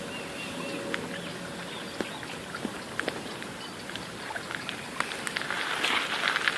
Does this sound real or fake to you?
real